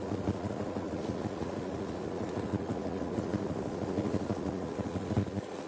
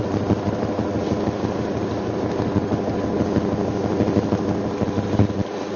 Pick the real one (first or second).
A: second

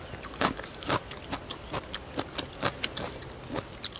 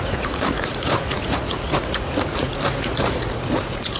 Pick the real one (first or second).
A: first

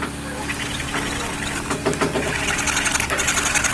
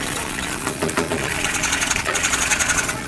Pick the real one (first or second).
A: first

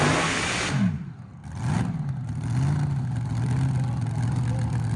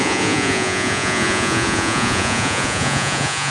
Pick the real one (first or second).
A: first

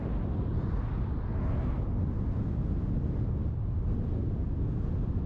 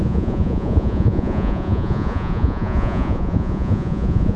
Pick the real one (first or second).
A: first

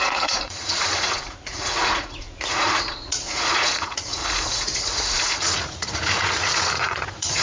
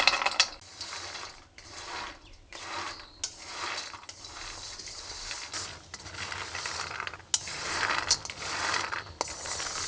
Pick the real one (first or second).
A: second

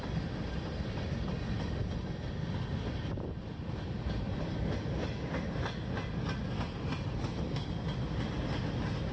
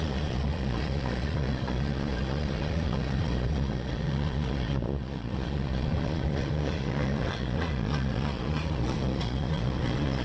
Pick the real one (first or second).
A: first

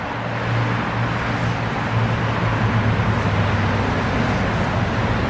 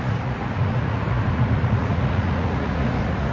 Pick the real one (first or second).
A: first